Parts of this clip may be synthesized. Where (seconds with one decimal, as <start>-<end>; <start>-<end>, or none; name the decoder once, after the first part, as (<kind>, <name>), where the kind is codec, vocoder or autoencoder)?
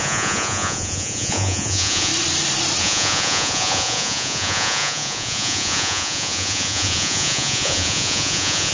0.0-2.1 (vocoder, Vocos); 2.8-8.7